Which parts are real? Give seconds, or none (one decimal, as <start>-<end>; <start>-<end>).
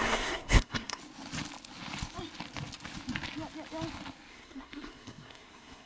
1.0-4.3